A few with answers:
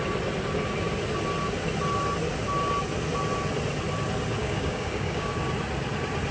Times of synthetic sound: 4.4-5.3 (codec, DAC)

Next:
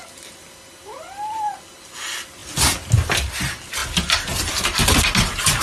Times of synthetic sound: none